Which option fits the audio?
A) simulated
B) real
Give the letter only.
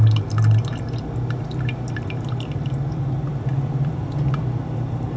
A